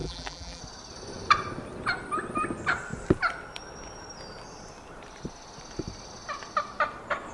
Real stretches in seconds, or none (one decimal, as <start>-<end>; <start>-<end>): 0.6-7.3